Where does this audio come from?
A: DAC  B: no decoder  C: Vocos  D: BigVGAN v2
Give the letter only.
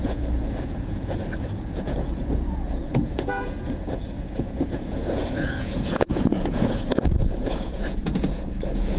C